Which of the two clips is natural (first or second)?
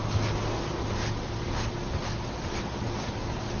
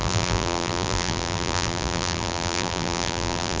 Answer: first